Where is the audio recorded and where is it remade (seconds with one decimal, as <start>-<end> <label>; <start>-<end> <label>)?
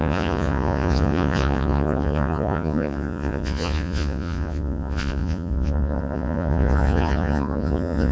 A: 0.0-8.1 remade